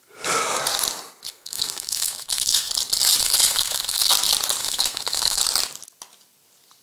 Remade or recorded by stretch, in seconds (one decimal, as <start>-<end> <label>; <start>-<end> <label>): 0.0-1.3 recorded; 1.3-2.7 remade; 2.7-3.2 recorded; 3.2-4.1 remade; 4.1-4.6 recorded; 4.6-5.4 remade; 5.4-6.8 recorded